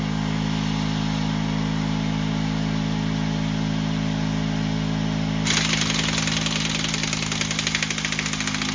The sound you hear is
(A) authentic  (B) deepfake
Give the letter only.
A